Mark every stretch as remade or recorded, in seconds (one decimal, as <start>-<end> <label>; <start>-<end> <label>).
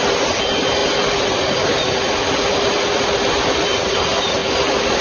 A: 0.0-5.0 recorded